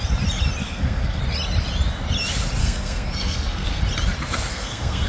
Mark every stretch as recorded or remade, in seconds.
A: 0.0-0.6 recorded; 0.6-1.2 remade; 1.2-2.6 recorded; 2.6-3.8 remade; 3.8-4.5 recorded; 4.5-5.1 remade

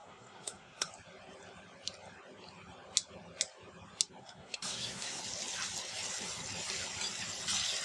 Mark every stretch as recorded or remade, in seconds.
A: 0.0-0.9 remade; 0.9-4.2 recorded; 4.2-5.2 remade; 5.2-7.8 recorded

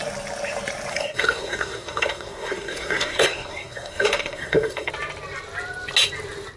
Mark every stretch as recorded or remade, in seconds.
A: 0.0-0.9 recorded; 0.9-4.9 remade; 4.9-6.6 recorded

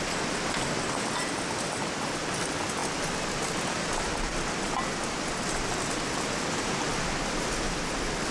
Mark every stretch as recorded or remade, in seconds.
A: 0.0-8.3 recorded

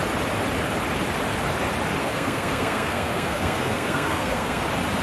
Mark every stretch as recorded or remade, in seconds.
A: 0.0-2.0 recorded; 2.0-4.6 remade; 4.6-5.0 recorded

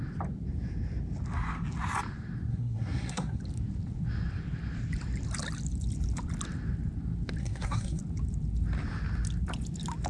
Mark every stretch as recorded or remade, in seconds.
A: 0.0-2.5 recorded; 2.5-3.4 remade; 3.4-7.4 recorded; 7.4-8.0 remade; 8.0-10.1 recorded